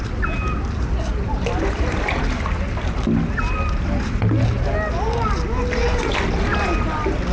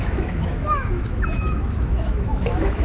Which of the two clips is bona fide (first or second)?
first